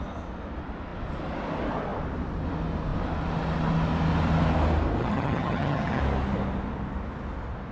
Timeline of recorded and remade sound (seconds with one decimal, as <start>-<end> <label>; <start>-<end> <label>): 0.0-5.0 recorded; 5.0-6.0 remade; 6.0-7.7 recorded

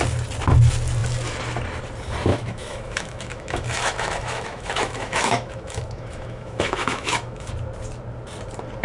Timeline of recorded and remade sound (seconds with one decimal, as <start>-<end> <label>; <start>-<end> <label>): 0.0-2.3 recorded; 2.3-7.5 remade; 7.5-8.8 recorded

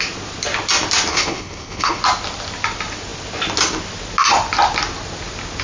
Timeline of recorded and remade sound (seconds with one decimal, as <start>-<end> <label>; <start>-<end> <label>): 0.0-1.1 recorded; 1.1-2.0 remade; 2.0-5.6 recorded